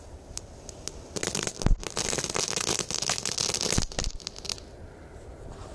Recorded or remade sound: recorded